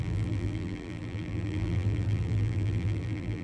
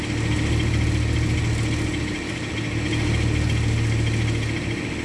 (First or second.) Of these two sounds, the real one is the second